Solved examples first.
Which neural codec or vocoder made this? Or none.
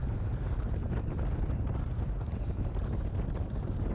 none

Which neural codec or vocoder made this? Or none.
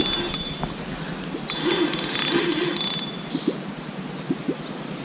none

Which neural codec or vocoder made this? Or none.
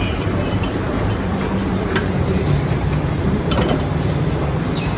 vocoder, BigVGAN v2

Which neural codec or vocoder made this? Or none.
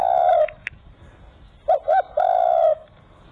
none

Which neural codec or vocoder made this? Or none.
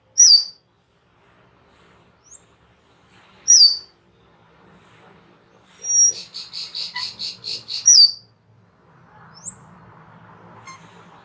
none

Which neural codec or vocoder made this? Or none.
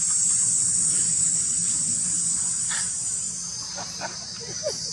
vocoder, BigVGAN v2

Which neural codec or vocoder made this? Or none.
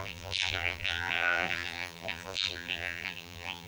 vocoder, BigVGAN v2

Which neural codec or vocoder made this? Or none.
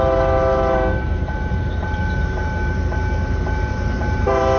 vocoder, BigVGAN v2